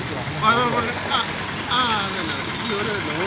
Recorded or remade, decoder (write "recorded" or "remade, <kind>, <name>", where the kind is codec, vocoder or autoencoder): recorded